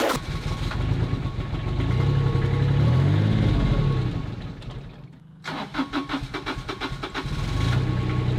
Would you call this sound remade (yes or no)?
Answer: no